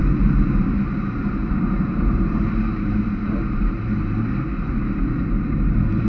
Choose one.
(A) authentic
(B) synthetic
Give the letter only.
B